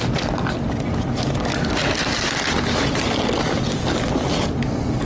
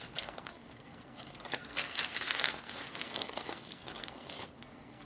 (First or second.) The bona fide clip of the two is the first